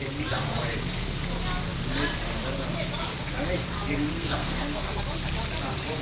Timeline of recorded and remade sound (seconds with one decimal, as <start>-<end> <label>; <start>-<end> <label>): 0.0-4.1 recorded; 4.1-5.0 remade; 5.0-6.0 recorded